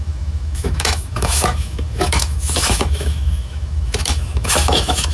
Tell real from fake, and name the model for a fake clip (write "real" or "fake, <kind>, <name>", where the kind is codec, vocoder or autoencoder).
fake, autoencoder, DAC-VAE